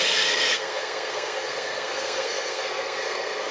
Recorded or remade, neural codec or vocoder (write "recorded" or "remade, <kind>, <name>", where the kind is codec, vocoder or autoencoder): remade, codec, SNAC